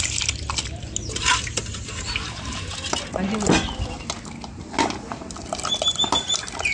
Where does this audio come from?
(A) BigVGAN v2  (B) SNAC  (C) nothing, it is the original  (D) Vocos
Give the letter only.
C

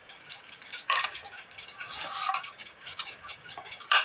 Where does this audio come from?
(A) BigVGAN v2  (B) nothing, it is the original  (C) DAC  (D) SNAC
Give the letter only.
C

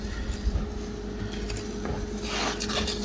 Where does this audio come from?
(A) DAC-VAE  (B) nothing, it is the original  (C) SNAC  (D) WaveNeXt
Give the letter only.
B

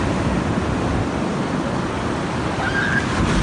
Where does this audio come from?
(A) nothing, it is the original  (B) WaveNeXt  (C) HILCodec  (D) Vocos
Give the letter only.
A